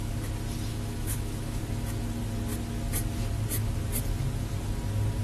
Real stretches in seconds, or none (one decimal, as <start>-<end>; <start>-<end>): 0.0-0.7; 1.6-5.2